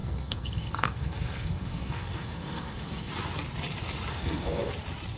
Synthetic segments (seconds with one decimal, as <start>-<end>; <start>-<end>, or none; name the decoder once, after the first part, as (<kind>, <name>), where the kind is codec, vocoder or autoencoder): 0.0-3.1 (codec, SNAC); 4.1-4.7